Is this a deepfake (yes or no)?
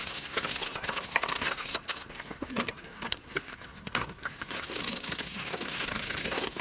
yes